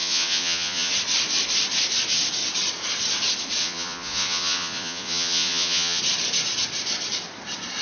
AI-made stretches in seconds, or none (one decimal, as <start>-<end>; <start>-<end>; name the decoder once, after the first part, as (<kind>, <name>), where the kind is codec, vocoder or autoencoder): 0.0-0.9 (vocoder, Vocos); 3.6-6.0